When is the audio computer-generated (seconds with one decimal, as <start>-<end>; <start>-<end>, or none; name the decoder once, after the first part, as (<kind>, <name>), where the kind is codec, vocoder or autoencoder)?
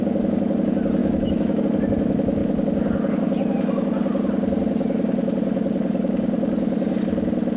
1.0-1.6 (autoencoder, DAC-VAE)